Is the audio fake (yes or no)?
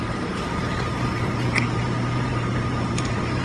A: yes